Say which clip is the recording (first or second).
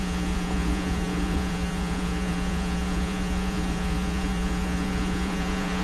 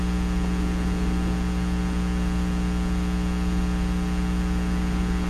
second